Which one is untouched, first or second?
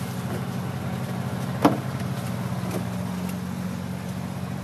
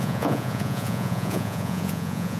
first